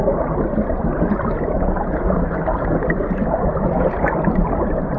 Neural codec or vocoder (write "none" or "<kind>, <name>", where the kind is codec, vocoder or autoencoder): none